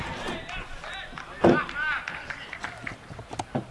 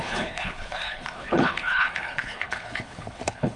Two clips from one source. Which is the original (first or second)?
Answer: first